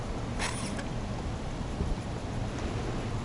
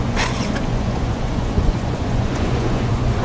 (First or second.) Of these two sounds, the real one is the first